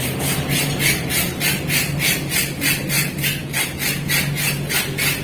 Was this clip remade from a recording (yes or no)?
no